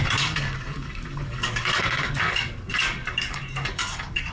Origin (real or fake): fake